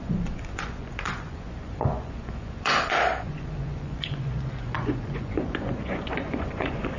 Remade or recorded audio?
remade